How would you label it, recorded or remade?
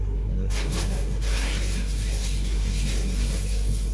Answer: remade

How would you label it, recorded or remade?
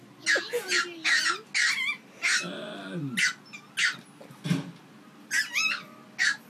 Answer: recorded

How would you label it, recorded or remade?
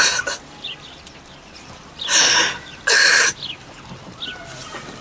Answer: recorded